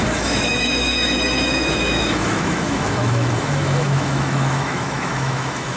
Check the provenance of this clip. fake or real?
fake